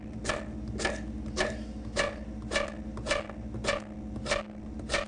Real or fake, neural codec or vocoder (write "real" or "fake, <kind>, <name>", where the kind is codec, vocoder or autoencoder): real